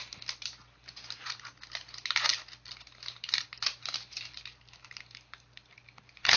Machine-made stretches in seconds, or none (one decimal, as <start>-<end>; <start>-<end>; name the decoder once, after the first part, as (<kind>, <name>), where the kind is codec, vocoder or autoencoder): 2.3-6.4 (vocoder, BigVGAN v2)